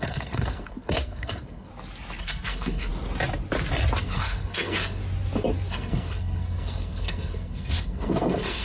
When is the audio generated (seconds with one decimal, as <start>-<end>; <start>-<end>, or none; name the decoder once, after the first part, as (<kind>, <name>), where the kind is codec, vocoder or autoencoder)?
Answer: 0.0-1.7 (codec, SNAC); 2.2-2.9; 4.0-5.0; 5.7-8.6